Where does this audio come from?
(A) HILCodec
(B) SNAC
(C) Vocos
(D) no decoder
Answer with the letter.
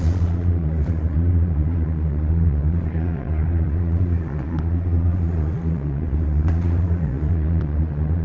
C